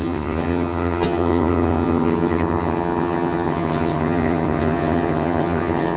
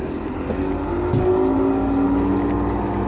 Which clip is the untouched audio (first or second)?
second